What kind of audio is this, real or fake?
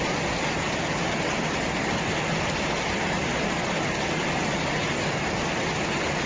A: real